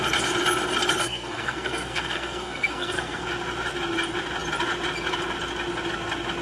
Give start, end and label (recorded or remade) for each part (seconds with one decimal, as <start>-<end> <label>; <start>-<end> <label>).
0.0-1.0 recorded; 1.0-3.3 remade; 3.3-6.4 recorded